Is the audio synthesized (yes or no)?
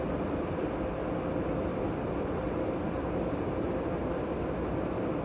no